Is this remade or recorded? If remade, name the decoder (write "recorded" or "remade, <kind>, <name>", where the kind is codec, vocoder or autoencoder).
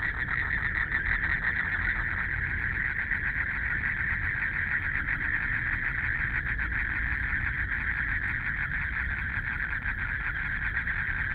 recorded